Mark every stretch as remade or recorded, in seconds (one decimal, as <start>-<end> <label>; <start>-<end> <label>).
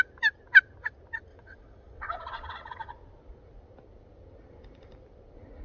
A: 0.0-1.3 recorded; 1.3-2.9 remade; 2.9-5.6 recorded